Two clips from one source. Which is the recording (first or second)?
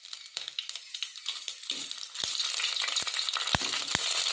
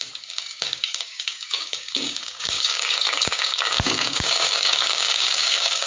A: first